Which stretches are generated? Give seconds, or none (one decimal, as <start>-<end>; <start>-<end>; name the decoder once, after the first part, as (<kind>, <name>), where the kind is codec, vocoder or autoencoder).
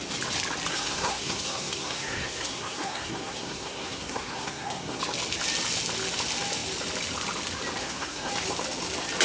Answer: 0.7-5.0 (codec, SNAC); 7.8-8.3